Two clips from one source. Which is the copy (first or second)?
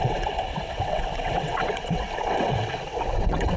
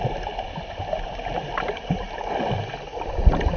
first